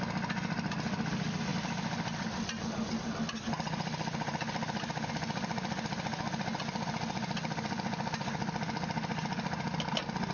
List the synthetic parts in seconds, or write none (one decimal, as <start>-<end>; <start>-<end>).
none